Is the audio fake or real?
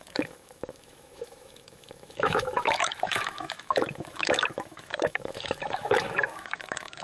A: fake